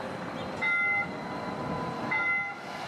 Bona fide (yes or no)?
yes